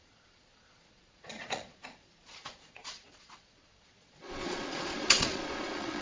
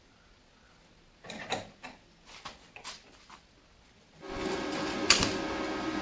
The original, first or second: second